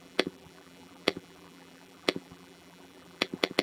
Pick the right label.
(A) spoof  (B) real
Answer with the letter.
A